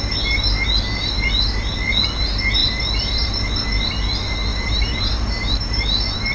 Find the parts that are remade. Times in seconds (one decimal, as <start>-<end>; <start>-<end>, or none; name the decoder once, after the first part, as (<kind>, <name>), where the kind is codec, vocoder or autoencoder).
2.6-3.3 (vocoder, BigVGAN v2); 4.5-5.8